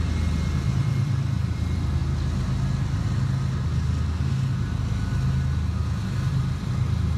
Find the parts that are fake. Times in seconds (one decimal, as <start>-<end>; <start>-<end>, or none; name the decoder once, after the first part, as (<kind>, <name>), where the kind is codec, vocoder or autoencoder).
0.0-2.0 (vocoder, BigVGAN v2); 6.3-7.2